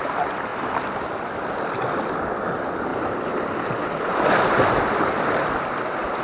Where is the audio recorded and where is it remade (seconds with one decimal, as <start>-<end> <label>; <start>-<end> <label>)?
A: 0.0-6.2 recorded